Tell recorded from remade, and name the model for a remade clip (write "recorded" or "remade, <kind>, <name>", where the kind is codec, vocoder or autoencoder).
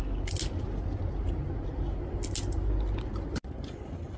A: recorded